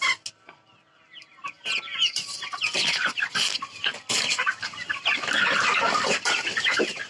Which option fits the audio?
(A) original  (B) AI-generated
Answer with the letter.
A